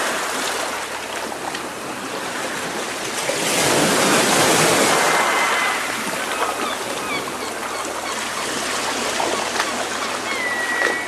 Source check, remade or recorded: recorded